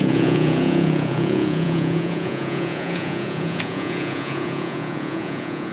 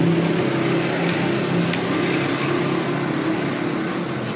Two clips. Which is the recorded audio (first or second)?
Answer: second